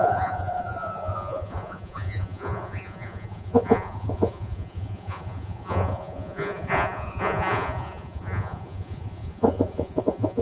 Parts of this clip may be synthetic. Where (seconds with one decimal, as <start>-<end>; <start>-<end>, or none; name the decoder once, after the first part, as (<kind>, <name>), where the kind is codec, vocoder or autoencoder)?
0.0-10.4 (vocoder, Vocos)

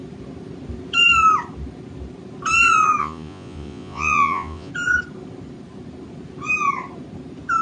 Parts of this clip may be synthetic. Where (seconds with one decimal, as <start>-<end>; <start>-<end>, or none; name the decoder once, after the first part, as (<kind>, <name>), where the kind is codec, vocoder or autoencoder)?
3.0-4.7 (vocoder, Vocos)

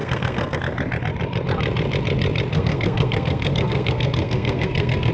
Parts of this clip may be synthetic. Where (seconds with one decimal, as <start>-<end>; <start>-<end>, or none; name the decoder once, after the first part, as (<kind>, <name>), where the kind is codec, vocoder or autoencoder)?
0.0-0.6 (codec, SNAC); 2.5-5.1

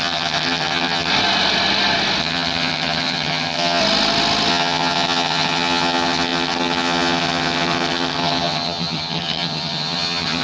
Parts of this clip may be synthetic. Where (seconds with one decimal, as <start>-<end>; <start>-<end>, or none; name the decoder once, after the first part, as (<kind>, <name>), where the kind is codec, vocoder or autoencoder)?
0.0-1.1 (vocoder, HiFi-GAN); 2.2-3.8; 4.5-10.4

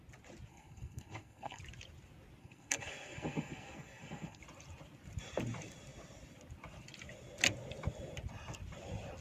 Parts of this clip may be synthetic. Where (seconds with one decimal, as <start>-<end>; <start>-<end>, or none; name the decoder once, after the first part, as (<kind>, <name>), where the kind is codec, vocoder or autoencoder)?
0.5-1.6 (codec, SNAC); 2.4-4.4